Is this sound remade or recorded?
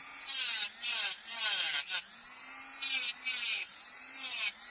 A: recorded